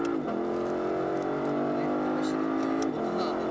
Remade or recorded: recorded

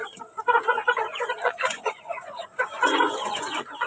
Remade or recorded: remade